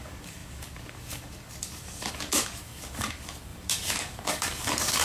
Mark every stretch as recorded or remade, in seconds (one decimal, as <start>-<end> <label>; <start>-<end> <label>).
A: 0.0-5.0 remade